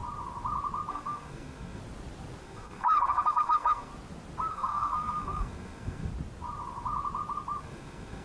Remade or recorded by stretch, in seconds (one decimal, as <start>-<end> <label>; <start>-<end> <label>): 0.0-0.9 recorded; 0.9-1.8 remade; 1.8-2.4 recorded; 2.4-3.9 remade; 3.9-4.5 recorded; 4.5-6.1 remade; 6.1-7.6 recorded; 7.6-8.2 remade